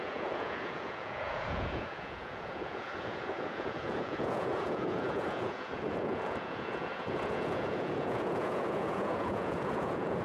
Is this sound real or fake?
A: fake